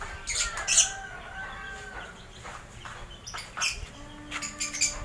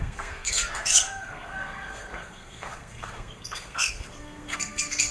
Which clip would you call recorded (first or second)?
first